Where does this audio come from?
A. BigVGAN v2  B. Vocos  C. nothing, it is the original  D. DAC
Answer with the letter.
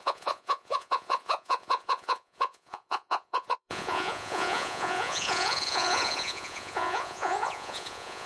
B